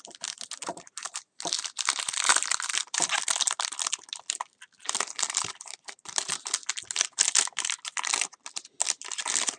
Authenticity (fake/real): real